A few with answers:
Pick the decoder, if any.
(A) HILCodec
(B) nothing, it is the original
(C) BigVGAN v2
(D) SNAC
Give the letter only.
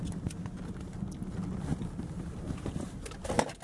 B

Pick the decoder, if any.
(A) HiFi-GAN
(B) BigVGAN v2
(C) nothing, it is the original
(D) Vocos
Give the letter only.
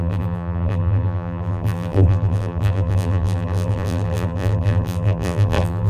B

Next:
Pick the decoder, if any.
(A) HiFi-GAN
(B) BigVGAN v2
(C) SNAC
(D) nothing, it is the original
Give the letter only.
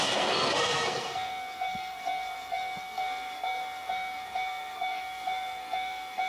C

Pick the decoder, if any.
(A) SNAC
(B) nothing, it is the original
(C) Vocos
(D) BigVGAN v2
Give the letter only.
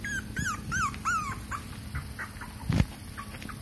B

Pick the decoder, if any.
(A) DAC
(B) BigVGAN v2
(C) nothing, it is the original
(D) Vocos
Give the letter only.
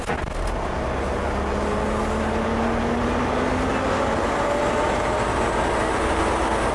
C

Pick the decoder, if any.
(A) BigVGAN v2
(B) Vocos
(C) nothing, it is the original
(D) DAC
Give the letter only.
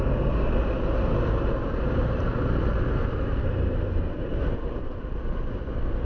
C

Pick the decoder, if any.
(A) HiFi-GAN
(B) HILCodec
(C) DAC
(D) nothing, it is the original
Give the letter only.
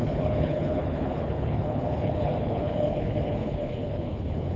B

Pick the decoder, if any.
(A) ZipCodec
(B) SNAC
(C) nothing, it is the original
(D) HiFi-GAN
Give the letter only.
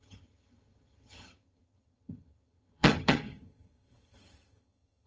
D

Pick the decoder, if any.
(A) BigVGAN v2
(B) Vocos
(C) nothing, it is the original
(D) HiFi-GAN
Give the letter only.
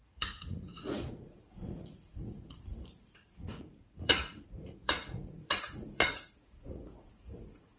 B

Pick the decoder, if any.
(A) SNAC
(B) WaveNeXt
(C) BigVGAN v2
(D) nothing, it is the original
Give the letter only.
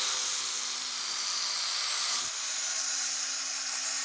D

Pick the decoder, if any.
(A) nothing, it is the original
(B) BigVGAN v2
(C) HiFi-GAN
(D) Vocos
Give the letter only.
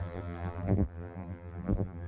B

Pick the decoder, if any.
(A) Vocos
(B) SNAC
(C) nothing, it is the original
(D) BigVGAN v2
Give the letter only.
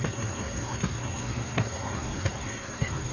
B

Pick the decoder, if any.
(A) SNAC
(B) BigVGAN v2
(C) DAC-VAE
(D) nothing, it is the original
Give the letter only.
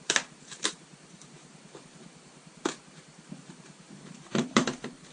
B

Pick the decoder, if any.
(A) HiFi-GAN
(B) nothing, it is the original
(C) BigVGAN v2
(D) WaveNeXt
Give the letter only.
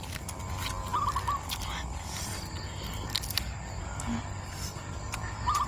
B